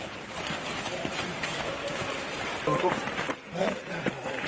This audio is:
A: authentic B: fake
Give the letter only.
B